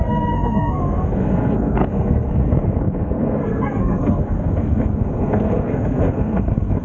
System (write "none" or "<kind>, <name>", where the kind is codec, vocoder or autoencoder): codec, SNAC